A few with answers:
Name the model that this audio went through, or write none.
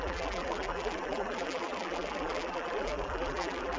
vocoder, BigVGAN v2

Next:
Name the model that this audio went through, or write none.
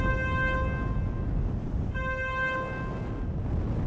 none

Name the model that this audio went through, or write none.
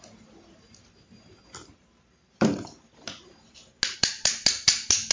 none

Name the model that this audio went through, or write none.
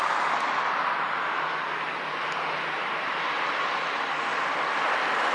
none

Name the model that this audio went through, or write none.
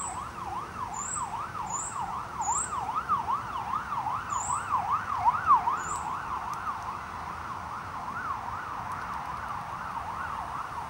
none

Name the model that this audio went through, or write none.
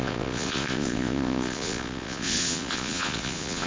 vocoder, Vocos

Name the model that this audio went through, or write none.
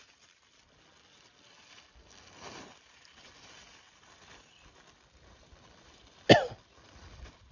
none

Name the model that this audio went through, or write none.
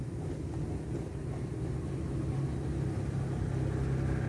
none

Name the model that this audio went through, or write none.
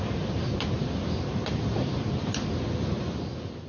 none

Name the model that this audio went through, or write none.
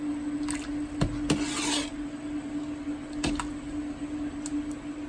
none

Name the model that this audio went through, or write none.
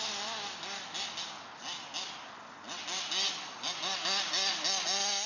none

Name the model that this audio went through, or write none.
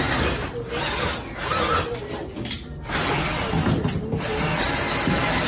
none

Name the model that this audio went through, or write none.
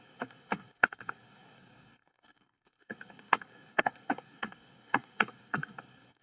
codec, SNAC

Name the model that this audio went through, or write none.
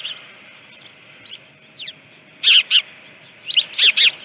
none